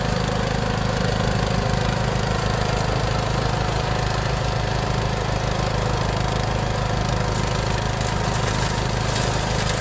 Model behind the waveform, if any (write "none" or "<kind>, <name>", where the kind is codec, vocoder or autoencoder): none